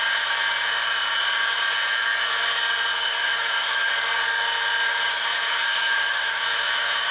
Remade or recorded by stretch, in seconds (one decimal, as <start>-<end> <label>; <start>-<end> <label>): 0.0-2.9 recorded; 2.9-3.9 remade; 3.9-4.9 recorded; 4.9-7.1 remade